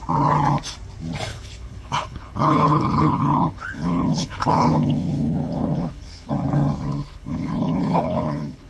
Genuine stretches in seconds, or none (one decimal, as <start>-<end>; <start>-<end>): 0.0-1.3; 6.3-7.0